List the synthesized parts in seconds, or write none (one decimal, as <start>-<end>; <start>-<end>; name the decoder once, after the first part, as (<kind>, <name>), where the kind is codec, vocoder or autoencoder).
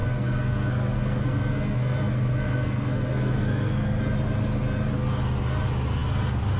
0.0-4.0 (codec, SNAC)